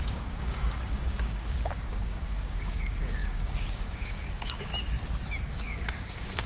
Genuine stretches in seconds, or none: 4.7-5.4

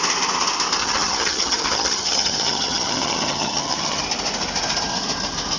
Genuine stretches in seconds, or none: 0.0-0.8; 4.0-5.6

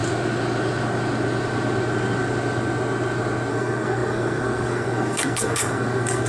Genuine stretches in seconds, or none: 0.0-3.5